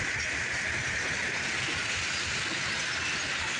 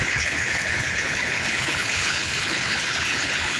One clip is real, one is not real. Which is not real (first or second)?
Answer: second